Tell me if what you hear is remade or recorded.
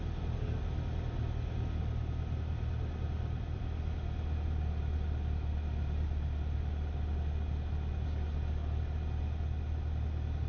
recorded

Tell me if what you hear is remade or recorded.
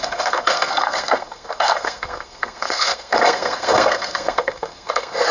remade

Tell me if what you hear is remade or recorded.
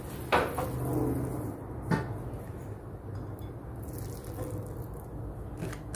recorded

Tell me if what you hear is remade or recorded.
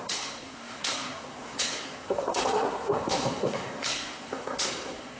remade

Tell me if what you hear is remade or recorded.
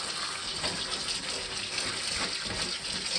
recorded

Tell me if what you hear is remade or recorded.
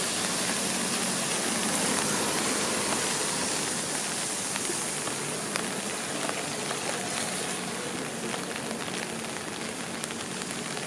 recorded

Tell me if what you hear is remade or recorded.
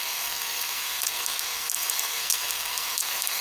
remade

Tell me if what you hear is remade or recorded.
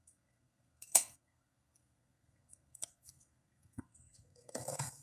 remade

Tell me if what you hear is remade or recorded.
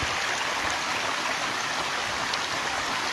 recorded